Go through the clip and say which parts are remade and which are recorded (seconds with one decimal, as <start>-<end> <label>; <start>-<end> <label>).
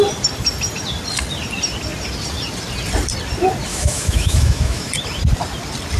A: 0.0-3.7 recorded; 3.7-4.9 remade; 4.9-6.0 recorded